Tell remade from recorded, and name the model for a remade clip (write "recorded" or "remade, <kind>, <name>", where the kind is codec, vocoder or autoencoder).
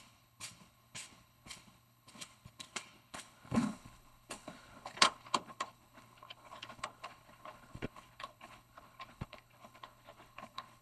remade, codec, HILCodec